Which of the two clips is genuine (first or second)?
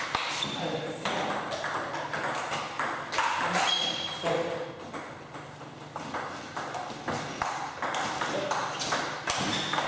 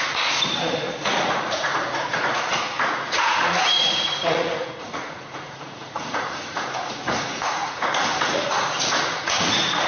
first